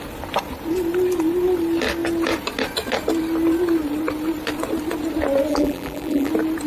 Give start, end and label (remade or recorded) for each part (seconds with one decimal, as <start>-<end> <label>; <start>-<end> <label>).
0.0-5.5 recorded; 5.5-6.3 remade; 6.3-6.7 recorded